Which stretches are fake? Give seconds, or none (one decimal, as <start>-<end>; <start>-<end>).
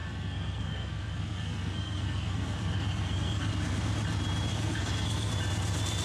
0.0-3.5; 4.5-5.3